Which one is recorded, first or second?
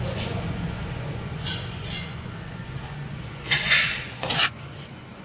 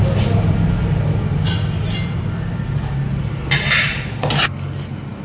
second